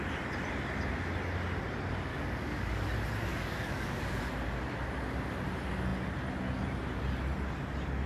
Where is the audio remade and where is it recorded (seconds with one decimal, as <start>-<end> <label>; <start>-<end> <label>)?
0.0-2.1 recorded; 2.1-2.9 remade; 2.9-3.3 recorded; 3.3-4.2 remade; 4.2-8.1 recorded